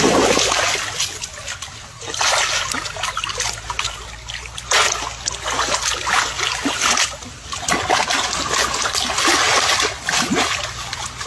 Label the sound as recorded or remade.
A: recorded